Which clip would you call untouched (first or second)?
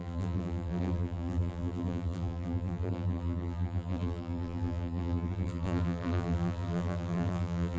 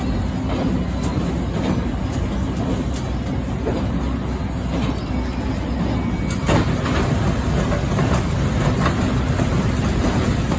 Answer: second